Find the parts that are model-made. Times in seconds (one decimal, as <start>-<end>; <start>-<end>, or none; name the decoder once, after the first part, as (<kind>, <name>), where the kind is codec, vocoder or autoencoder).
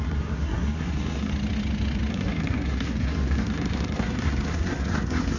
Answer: 0.0-1.3 (codec, SNAC); 2.1-5.4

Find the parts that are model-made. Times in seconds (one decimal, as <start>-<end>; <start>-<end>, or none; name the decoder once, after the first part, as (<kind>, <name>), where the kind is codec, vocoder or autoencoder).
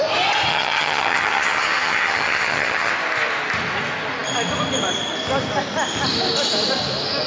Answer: 0.5-2.9 (vocoder, HiFi-GAN)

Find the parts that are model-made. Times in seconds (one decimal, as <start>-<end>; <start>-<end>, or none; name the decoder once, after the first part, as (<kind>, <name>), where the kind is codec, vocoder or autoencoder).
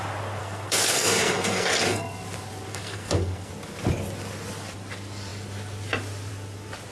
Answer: 0.4-2.0 (codec, SNAC); 2.7-3.5